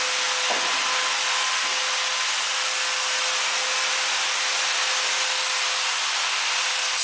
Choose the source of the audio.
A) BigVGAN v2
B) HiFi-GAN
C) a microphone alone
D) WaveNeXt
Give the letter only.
C